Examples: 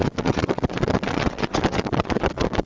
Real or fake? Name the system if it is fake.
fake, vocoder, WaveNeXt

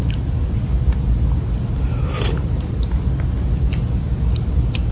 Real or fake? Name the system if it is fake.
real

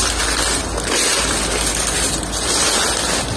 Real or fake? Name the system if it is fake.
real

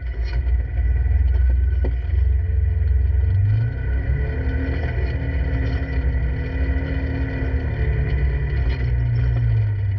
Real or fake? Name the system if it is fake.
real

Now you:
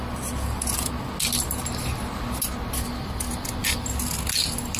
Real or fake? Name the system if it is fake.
real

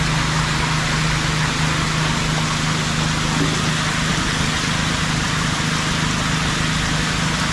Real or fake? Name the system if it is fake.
real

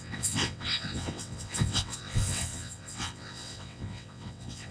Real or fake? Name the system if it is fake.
fake, vocoder, WaveNeXt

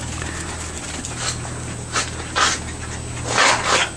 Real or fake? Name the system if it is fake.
real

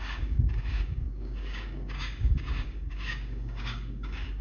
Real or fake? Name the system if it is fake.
fake, codec, DAC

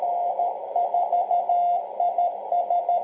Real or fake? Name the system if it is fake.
real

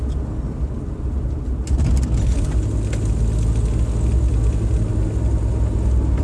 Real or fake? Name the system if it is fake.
real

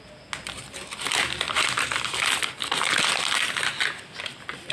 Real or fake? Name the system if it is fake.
real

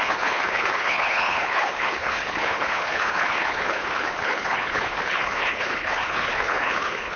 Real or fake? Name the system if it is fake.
fake, codec, HILCodec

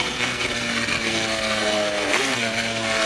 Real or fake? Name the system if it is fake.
fake, codec, SNAC